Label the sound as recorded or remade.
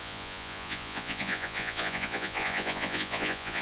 remade